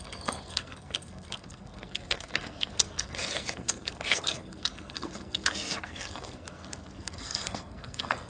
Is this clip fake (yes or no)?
yes